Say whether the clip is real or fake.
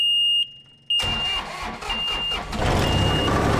real